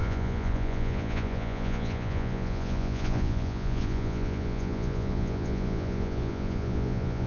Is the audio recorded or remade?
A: remade